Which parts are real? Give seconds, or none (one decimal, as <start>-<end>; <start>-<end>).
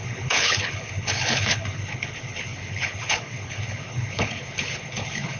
none